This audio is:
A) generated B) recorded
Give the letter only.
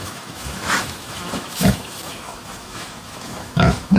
A